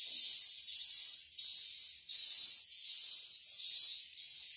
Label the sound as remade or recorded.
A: recorded